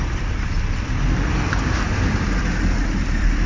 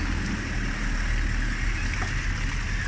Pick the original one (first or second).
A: second